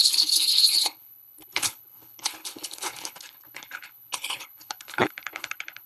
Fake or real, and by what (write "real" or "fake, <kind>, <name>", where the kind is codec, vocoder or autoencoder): fake, codec, HILCodec